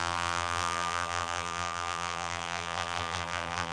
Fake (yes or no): yes